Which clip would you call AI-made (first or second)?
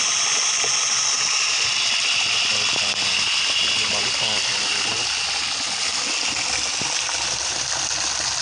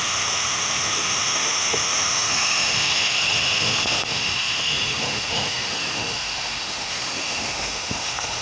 second